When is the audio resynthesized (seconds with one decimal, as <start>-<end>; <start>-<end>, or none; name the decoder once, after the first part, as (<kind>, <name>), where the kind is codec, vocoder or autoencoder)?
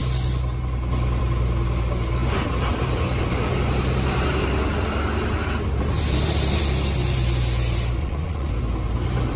8.0-8.5 (vocoder, Vocos)